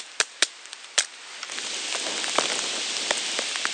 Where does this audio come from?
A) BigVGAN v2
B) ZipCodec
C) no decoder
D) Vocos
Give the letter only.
C